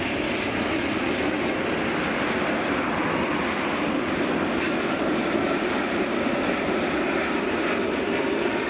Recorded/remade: recorded